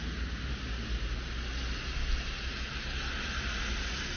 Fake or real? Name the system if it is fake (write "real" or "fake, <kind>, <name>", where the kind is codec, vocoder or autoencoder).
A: real